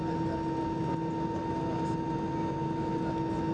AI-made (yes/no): no